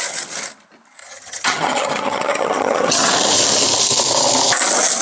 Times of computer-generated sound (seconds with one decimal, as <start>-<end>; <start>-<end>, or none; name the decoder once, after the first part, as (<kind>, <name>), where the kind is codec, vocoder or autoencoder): 1.0-3.1 (vocoder, HiFi-GAN)